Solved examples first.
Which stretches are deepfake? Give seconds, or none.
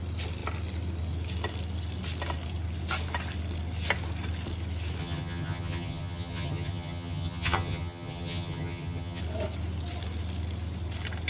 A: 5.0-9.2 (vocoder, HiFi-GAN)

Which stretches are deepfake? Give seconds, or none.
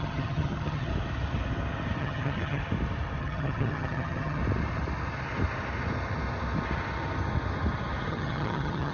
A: 0.0-0.9 (vocoder, HiFi-GAN); 2.0-2.6; 3.2-4.4; 8.1-8.9